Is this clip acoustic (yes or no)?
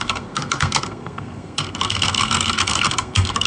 no